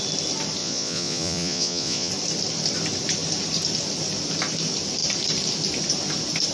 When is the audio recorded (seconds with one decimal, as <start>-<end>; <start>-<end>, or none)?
0.0-0.6; 2.1-6.5